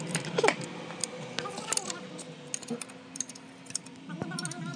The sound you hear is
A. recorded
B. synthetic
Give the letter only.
A